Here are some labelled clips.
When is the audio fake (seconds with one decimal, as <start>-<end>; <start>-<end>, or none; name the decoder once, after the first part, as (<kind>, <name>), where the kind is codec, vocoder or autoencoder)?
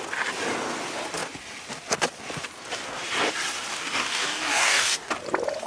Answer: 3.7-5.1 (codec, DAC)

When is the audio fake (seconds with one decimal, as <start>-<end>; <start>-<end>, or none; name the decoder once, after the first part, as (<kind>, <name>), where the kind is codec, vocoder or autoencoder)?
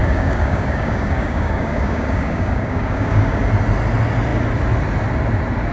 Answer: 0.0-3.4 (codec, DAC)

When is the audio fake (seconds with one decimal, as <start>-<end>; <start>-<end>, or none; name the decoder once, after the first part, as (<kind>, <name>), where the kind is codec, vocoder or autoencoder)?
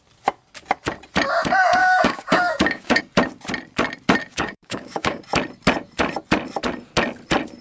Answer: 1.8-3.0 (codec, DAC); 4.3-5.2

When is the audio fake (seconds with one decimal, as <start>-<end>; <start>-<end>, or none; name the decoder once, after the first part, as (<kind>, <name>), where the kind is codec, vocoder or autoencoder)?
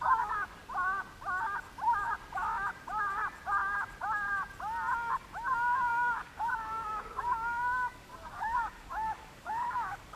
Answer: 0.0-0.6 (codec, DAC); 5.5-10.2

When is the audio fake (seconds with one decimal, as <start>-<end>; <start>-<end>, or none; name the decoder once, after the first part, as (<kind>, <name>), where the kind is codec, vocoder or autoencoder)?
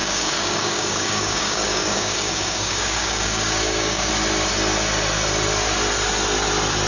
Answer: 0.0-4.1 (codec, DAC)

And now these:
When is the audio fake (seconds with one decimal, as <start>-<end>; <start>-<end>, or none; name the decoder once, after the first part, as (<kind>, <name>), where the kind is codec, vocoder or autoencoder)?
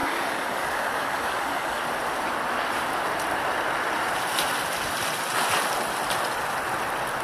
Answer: 0.0-1.8 (codec, DAC)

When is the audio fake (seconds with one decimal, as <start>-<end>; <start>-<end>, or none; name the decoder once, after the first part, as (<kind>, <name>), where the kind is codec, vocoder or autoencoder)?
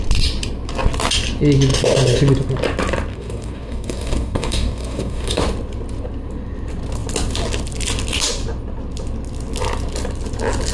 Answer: 3.1-5.4 (codec, DAC)